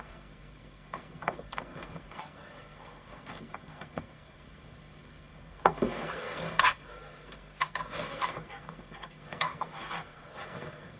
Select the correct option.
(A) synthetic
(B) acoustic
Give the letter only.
A